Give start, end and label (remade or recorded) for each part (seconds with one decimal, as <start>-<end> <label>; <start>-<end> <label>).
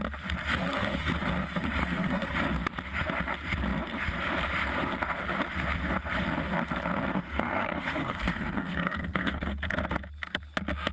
0.0-1.8 recorded; 1.8-2.3 remade; 2.3-7.1 recorded; 7.1-9.6 remade; 9.6-10.9 recorded